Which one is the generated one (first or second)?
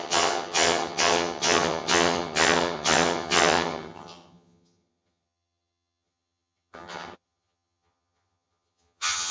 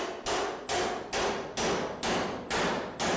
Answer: first